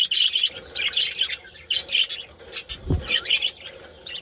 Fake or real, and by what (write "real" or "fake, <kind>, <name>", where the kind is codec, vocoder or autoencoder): real